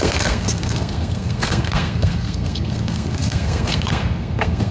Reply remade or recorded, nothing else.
remade